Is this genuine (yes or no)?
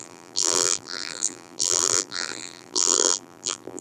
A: no